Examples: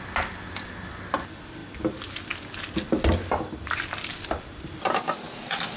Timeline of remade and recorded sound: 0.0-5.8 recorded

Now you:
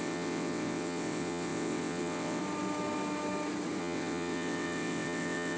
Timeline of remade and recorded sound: 0.0-2.4 remade; 2.4-3.8 recorded; 3.8-5.6 remade

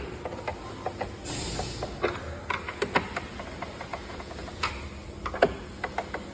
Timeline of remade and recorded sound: 0.0-3.9 recorded; 3.9-4.7 remade; 4.7-6.3 recorded

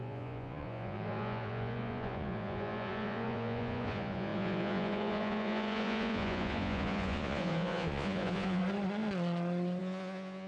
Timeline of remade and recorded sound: 0.0-8.6 remade; 8.6-9.8 recorded; 9.8-10.5 remade

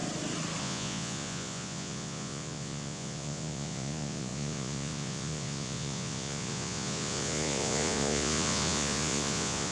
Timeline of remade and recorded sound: 0.0-0.6 recorded; 0.6-9.7 remade